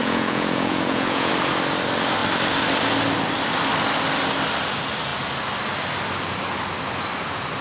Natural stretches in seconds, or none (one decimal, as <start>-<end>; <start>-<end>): 1.3-7.6